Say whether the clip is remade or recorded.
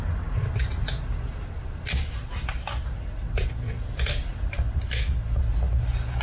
recorded